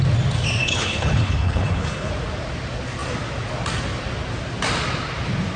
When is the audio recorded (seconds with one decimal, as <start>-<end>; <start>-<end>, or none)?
0.0-0.6; 2.1-5.6